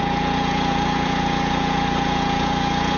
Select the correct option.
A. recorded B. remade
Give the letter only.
B